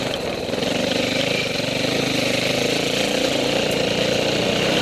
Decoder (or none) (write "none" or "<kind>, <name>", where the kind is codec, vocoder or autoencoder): none